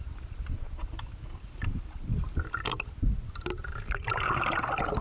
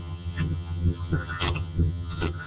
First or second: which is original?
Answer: first